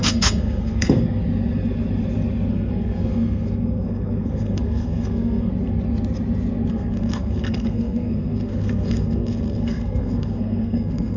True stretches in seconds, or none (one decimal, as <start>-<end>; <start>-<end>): 1.2-2.5; 5.5-6.7